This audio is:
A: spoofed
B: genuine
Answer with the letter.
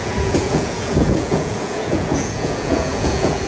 A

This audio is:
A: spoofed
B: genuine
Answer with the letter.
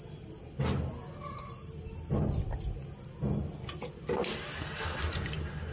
B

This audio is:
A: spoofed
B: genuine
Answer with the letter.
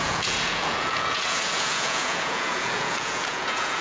A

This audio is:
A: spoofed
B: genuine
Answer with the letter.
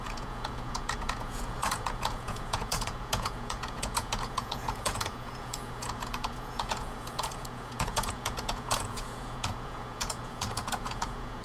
A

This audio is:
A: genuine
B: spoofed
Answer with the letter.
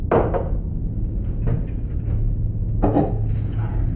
A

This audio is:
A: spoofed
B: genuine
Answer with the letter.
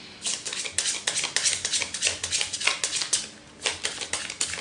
B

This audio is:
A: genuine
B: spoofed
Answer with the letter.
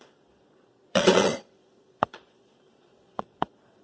B